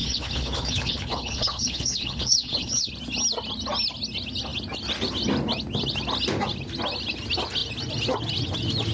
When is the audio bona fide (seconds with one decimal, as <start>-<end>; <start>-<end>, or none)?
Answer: 2.9-8.9